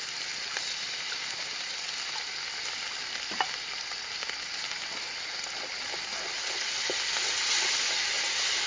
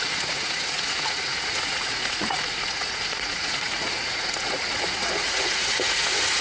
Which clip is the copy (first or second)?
second